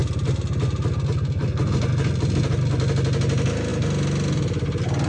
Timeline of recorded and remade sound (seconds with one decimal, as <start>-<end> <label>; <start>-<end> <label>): 0.0-5.1 recorded